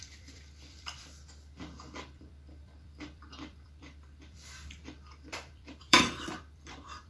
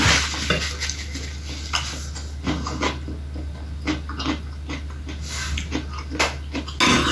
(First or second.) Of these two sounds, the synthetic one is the first